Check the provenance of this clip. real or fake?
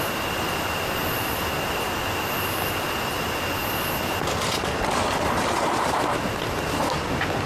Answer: real